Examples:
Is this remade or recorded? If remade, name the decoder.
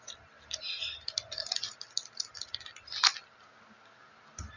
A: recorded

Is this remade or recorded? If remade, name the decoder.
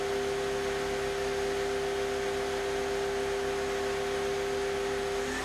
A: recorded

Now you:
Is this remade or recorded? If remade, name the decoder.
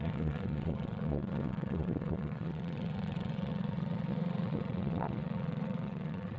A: remade, vocoder, Vocos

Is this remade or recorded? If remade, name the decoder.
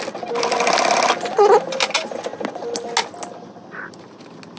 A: recorded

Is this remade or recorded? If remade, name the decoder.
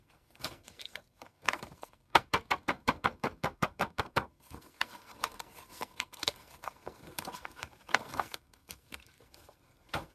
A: remade, codec, SNAC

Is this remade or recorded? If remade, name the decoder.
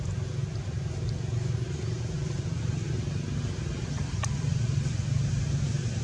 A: recorded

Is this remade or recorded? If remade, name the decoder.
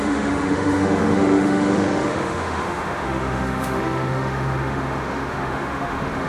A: remade, autoencoder, DAC-VAE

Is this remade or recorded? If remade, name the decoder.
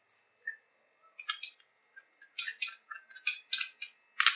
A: recorded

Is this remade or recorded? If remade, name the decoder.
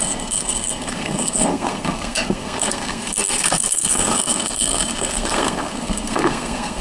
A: remade, codec, SNAC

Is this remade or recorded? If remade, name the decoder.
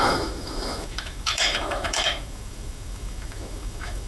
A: remade, autoencoder, DAC-VAE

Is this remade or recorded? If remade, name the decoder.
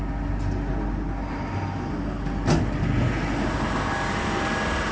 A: recorded